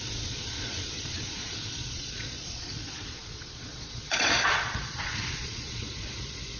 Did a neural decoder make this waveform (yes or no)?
yes